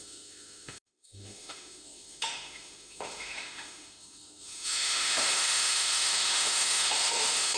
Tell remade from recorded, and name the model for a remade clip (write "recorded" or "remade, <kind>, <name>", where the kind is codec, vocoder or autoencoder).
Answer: remade, autoencoder, DAC-VAE